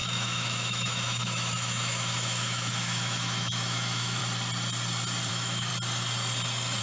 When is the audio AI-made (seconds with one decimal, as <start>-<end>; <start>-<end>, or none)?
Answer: 0.0-4.2; 5.3-5.7